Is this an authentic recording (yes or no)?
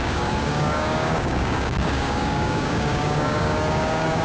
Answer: no